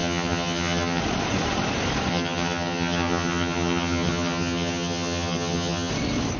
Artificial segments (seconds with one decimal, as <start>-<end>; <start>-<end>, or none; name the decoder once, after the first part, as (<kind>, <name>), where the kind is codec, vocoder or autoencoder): 0.0-1.0 (vocoder, HiFi-GAN); 2.1-5.9